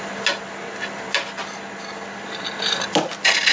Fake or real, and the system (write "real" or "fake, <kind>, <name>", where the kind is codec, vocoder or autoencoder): real